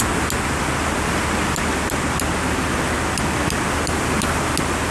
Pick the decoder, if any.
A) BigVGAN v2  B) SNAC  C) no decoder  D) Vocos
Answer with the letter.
C